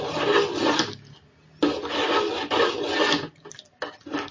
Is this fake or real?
real